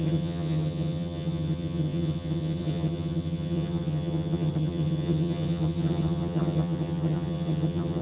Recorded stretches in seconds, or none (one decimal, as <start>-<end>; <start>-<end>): none